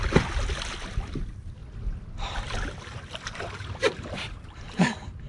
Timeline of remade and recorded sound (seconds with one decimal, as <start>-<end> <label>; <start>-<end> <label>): 0.0-5.3 recorded